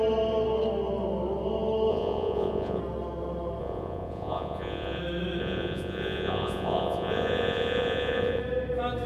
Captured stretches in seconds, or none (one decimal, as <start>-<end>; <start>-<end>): 0.0-1.9; 2.8-3.6; 5.0-5.4; 8.4-9.1